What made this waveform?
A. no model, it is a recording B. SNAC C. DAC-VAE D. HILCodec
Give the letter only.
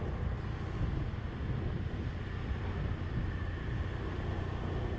A